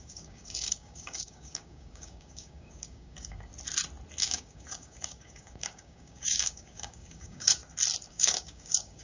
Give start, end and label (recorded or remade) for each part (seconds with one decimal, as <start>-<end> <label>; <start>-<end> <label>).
0.0-3.5 remade; 3.5-4.2 recorded; 4.2-7.6 remade; 7.6-8.1 recorded; 8.1-9.0 remade